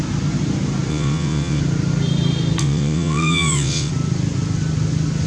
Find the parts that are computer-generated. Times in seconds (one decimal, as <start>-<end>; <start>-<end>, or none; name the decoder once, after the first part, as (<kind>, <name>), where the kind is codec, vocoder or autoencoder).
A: 0.9-1.6 (vocoder, WaveNeXt); 2.6-3.9